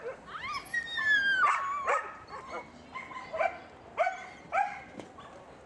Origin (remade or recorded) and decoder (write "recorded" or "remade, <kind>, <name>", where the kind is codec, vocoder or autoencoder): recorded